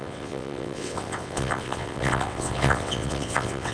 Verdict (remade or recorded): remade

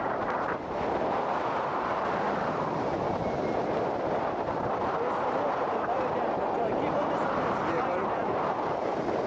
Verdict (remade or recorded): remade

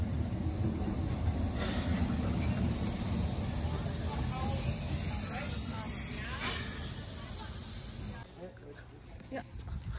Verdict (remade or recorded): recorded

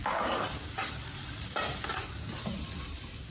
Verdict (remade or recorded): recorded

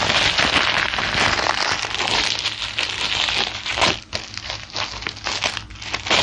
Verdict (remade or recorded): recorded